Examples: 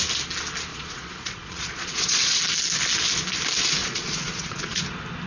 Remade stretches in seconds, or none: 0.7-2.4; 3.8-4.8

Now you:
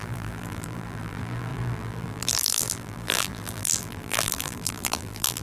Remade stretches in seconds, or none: 0.0-5.4

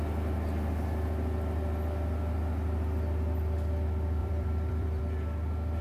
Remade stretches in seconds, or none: 4.2-5.0

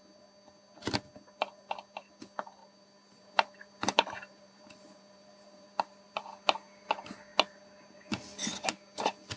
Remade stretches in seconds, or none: 2.6-6.2